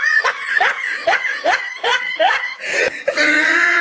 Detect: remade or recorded remade